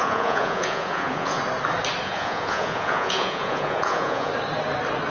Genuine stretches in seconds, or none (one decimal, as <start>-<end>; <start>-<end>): 1.4-2.0; 4.3-5.1